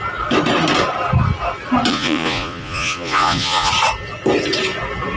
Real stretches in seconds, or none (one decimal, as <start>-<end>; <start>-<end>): 0.0-1.9; 3.7-5.2